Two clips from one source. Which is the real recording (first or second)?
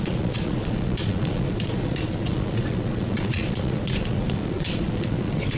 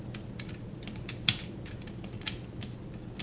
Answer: second